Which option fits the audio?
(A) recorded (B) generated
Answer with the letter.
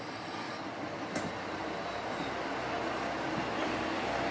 A